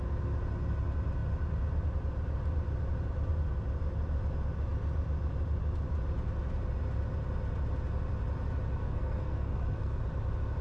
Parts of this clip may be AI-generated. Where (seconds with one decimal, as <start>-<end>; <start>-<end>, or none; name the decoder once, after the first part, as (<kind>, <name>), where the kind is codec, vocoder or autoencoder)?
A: 8.8-10.0 (codec, SNAC)